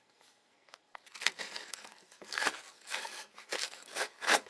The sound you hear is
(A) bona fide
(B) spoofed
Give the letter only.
B